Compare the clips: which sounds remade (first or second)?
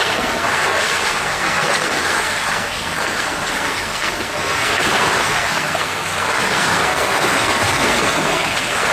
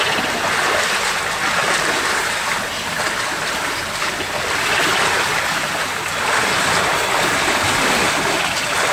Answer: first